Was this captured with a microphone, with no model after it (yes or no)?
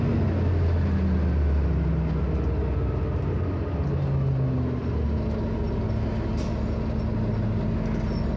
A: yes